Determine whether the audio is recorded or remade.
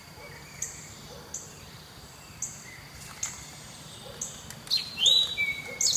remade